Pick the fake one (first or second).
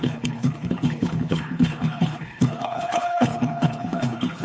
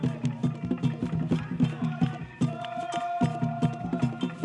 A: first